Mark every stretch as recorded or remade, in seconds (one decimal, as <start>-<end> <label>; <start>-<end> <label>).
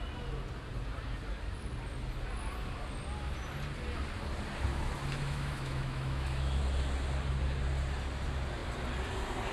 0.0-4.7 recorded; 4.7-6.6 remade; 6.6-9.5 recorded